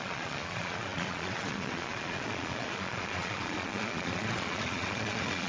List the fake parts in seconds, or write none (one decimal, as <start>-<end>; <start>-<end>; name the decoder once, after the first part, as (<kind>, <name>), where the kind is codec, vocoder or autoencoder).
0.0-5.5 (vocoder, Vocos)